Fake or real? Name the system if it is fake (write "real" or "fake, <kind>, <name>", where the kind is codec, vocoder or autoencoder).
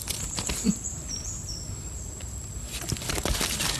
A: fake, vocoder, BigVGAN v2